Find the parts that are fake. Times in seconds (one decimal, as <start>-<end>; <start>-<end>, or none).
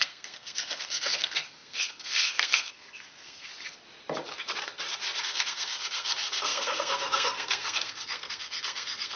0.0-3.5; 5.2-9.2